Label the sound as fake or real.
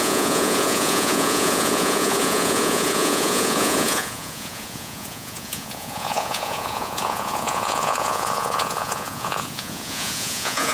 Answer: fake